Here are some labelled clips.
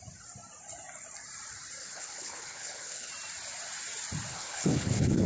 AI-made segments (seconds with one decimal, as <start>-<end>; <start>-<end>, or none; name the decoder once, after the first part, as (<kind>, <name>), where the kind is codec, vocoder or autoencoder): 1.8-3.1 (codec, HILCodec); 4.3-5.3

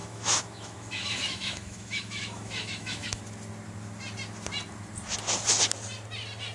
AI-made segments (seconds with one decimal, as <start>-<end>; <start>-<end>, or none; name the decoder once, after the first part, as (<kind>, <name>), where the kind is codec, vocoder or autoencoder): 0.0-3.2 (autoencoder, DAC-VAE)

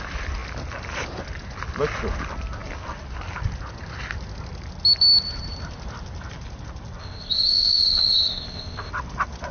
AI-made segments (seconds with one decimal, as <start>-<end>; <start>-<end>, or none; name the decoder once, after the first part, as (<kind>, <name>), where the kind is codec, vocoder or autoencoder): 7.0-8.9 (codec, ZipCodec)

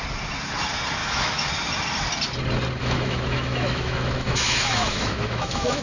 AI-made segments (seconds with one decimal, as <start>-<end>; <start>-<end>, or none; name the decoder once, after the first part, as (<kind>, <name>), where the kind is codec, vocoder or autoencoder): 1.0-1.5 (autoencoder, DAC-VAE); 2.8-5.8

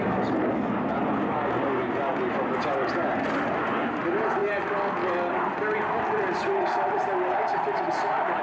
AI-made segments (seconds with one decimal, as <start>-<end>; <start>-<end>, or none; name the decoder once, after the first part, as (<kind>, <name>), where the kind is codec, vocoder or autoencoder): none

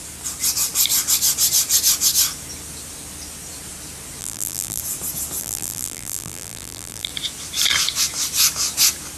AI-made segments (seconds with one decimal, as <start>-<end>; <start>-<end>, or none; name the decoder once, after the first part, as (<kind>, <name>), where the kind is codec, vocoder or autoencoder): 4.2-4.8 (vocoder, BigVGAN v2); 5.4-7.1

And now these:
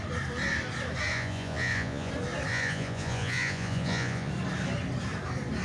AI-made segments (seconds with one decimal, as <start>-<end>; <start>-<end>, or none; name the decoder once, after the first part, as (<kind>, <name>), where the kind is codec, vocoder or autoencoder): 1.1-2.1 (vocoder, Vocos); 2.5-4.3